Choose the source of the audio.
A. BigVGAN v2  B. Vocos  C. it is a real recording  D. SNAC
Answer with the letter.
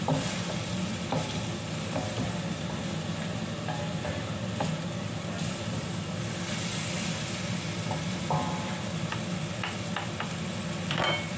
C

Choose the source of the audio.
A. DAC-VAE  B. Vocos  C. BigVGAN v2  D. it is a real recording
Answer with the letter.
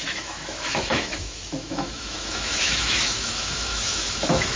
A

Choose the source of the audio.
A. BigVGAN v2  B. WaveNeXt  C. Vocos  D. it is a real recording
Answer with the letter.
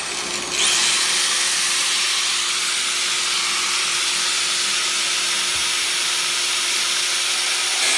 D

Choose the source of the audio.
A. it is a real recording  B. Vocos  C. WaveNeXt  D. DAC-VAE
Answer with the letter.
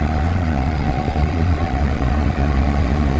B